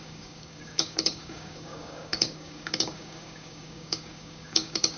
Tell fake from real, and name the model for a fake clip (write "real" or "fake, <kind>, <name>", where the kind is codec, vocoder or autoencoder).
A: fake, codec, DAC